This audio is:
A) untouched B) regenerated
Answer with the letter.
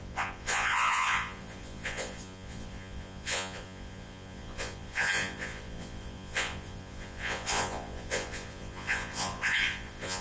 B